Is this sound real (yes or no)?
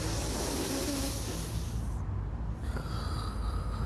yes